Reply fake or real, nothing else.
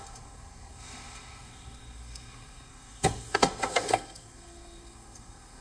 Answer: fake